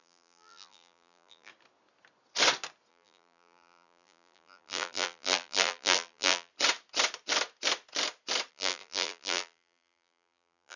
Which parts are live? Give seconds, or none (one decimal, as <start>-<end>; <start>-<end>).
1.5-2.9; 6.5-8.5